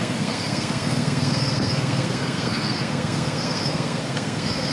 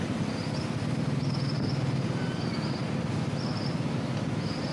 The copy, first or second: first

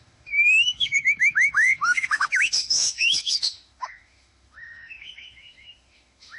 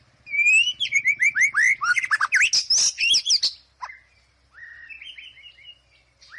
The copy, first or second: first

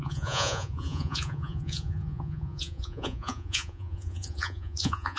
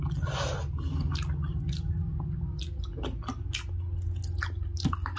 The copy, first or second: first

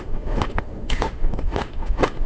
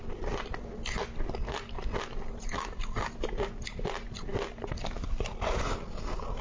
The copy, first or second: first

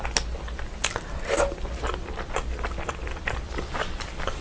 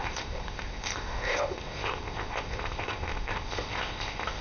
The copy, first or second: second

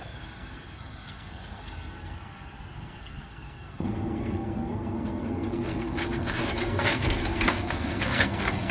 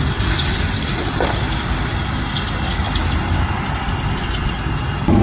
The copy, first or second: first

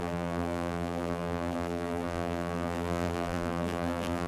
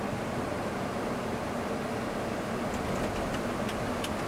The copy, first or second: first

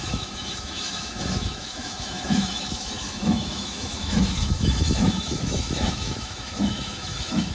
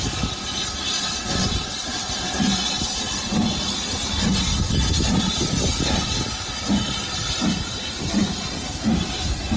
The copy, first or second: first